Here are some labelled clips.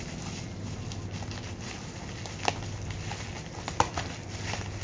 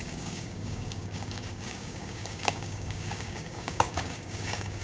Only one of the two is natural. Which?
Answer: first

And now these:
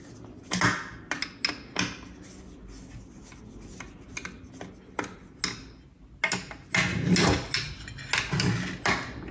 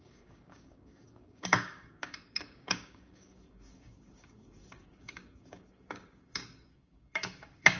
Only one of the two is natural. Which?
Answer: first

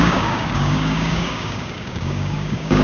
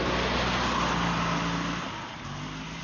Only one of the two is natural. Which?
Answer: second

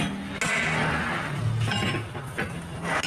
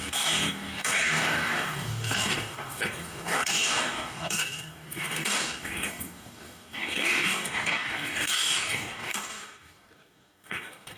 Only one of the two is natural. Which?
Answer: first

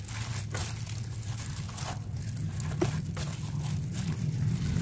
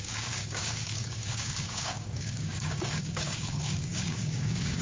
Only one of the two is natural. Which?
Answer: first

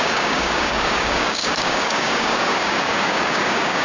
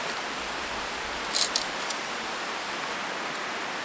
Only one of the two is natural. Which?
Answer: second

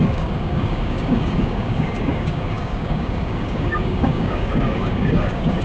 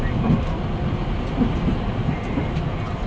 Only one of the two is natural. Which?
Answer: second